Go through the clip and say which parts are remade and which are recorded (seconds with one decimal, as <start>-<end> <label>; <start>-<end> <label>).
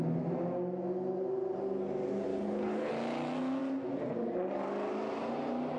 0.0-2.3 recorded; 2.3-2.9 remade; 2.9-5.8 recorded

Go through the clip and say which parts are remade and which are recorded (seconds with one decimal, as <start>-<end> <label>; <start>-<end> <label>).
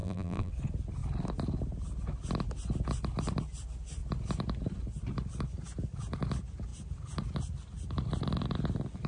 0.0-0.5 remade; 0.5-9.1 recorded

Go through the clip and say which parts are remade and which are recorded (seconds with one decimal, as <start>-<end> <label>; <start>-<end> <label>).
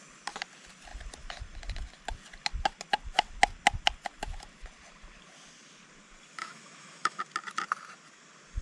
0.0-6.4 recorded; 6.4-7.2 remade; 7.2-8.6 recorded